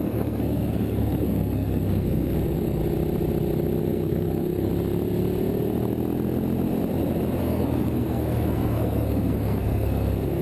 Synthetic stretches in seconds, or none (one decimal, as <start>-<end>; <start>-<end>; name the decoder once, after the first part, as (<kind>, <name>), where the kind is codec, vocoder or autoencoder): 0.0-2.8 (codec, SNAC); 3.8-4.7; 7.4-10.4